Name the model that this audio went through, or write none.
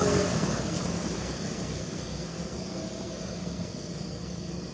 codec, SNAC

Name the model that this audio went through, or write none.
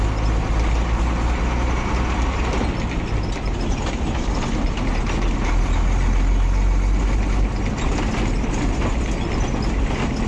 none